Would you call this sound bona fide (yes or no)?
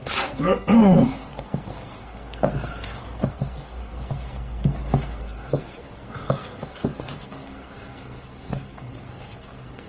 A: no